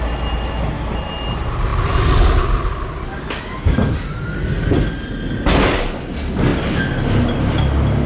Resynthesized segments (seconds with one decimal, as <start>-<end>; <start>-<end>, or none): none